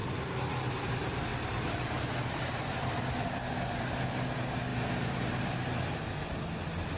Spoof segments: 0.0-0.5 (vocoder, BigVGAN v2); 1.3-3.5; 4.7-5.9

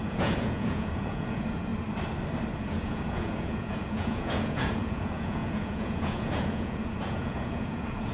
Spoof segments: 0.0-1.7 (vocoder, Vocos); 2.6-8.1

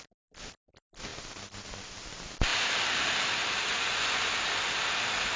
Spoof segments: 3.7-4.3 (vocoder, Vocos)

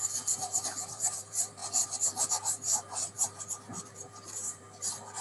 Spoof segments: 0.9-1.6 (vocoder, BigVGAN v2); 2.3-5.2

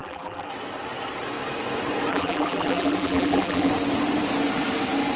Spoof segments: 0.0-0.5 (vocoder, BigVGAN v2); 2.1-3.7